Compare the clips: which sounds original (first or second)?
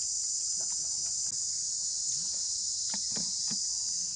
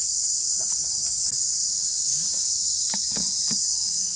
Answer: first